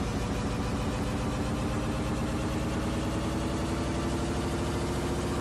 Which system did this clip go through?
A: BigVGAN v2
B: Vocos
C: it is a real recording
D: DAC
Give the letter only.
C